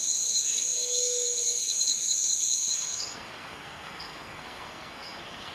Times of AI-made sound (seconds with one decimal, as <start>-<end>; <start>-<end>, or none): 0.0-5.5